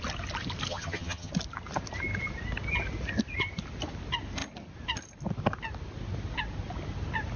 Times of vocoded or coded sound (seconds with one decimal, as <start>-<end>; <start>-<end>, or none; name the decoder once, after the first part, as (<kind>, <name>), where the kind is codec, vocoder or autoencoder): 0.7-1.3 (vocoder, HiFi-GAN)